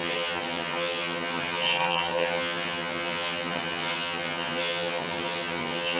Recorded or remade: remade